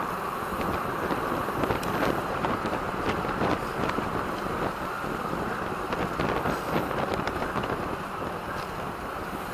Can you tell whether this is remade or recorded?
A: recorded